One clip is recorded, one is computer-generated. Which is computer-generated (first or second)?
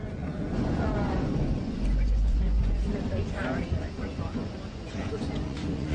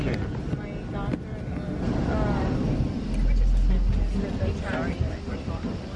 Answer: first